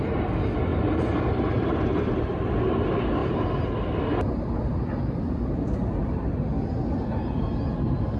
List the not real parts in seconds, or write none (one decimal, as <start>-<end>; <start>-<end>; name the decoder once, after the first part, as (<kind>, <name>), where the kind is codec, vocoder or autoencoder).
0.7-2.6 (vocoder, BigVGAN v2)